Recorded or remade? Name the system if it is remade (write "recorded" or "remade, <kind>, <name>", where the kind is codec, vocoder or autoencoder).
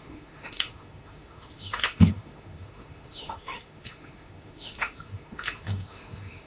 remade, autoencoder, DAC-VAE